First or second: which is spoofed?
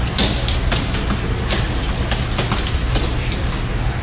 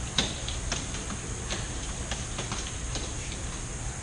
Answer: second